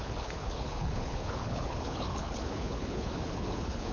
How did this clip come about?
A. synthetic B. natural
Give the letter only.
A